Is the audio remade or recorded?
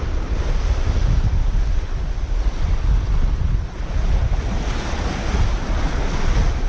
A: recorded